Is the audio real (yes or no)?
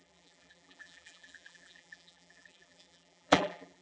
no